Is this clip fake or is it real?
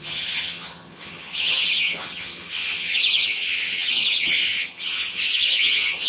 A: fake